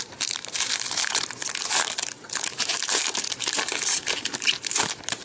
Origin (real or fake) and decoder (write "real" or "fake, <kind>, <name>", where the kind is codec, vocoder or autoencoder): fake, vocoder, BigVGAN v2